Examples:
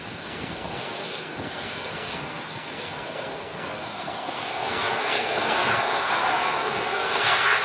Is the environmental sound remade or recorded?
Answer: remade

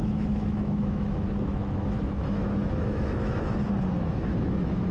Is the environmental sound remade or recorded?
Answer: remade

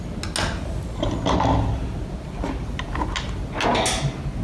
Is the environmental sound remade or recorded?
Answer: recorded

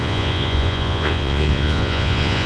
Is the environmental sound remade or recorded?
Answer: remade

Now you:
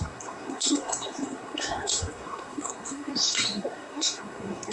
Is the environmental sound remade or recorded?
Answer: remade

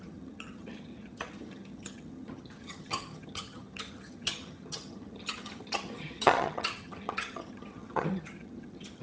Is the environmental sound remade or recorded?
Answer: remade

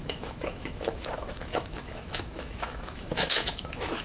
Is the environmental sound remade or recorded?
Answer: remade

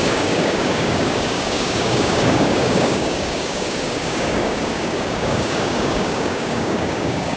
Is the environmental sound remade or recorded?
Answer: remade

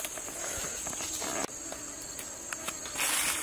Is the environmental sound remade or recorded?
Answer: recorded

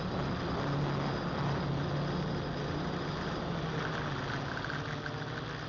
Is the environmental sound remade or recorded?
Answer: recorded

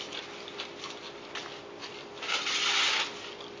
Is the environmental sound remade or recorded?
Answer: recorded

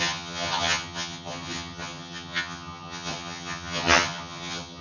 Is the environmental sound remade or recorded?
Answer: remade